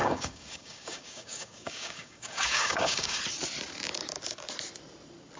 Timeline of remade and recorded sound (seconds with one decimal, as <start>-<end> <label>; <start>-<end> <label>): 0.0-3.2 remade; 3.2-5.4 recorded